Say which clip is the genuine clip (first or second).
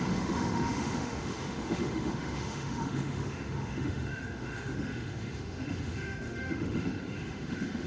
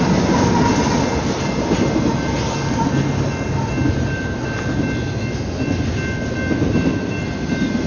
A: second